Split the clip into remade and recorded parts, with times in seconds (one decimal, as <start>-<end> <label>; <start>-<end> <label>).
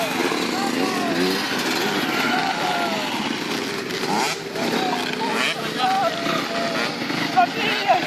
0.0-8.1 recorded